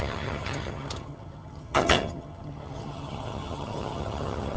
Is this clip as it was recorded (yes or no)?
no